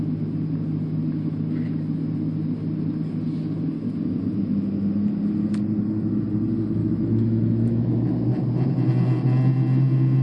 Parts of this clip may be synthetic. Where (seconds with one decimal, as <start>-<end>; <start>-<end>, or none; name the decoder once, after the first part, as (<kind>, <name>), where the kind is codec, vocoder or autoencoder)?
6.8-7.9 (autoencoder, DAC-VAE)